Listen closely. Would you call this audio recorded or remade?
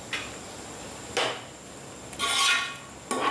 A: recorded